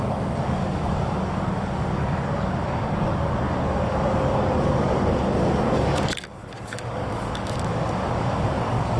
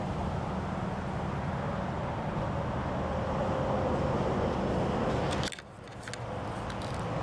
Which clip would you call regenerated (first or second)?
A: first